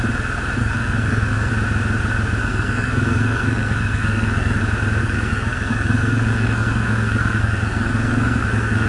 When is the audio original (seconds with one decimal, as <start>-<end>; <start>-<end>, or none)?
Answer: 0.0-0.6; 1.5-2.4; 4.6-5.0